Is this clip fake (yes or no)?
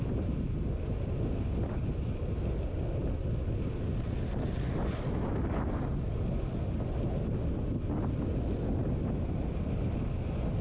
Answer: no